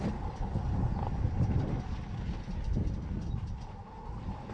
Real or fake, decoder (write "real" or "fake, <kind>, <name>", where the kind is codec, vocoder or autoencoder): real